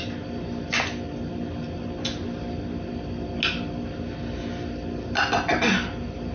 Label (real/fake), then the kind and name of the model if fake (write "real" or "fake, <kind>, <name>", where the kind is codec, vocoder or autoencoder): real